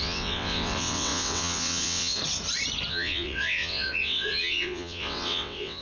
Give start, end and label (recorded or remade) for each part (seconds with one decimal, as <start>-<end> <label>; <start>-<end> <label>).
0.0-2.2 remade; 2.2-2.9 recorded; 2.9-5.8 remade